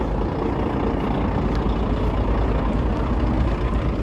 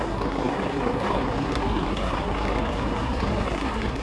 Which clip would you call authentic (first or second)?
first